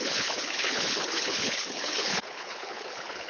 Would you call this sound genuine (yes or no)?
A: no